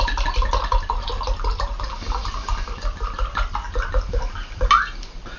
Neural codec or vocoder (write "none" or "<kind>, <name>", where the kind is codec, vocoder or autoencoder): none